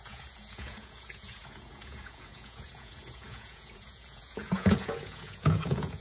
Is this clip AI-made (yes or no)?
yes